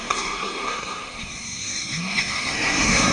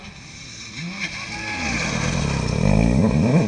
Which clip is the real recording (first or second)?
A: second